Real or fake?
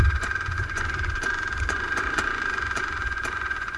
fake